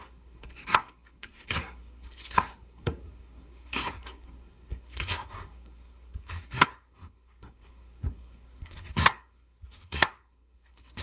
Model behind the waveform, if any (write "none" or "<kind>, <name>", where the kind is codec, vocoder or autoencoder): codec, SNAC